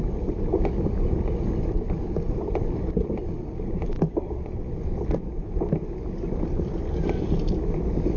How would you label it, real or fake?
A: real